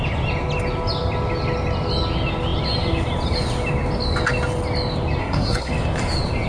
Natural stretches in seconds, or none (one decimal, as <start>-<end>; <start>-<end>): 0.0-5.2; 5.7-6.5